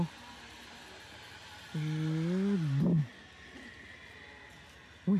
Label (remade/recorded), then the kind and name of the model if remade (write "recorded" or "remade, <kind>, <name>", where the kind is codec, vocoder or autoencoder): recorded